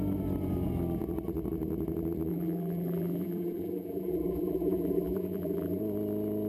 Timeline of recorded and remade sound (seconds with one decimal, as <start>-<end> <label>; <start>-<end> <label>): 0.0-2.3 recorded; 2.3-5.8 remade; 5.8-6.5 recorded